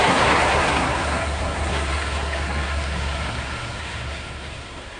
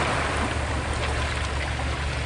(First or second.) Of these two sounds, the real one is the second